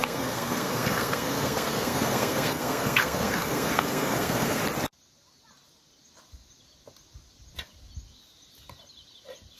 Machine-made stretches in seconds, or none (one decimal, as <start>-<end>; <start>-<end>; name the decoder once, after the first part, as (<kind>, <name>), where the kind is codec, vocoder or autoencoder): 0.0-4.6 (codec, SNAC)